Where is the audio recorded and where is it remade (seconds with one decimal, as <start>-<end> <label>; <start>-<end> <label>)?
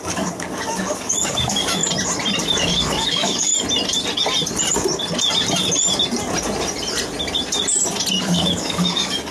0.0-1.8 remade; 1.8-2.4 recorded; 2.4-3.5 remade; 3.5-8.2 recorded; 8.2-9.3 remade